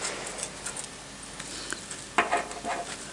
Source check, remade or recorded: recorded